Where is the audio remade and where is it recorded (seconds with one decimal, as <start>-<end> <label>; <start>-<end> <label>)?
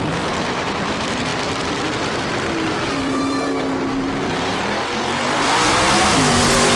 0.0-3.2 remade; 3.2-4.5 recorded; 4.5-6.8 remade